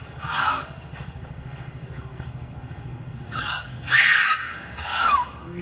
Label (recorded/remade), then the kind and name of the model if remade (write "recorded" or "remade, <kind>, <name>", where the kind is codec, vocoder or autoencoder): remade, codec, SNAC